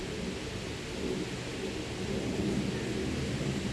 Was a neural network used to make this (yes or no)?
no